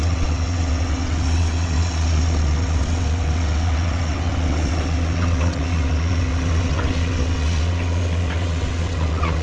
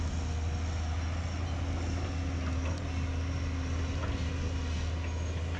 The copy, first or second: first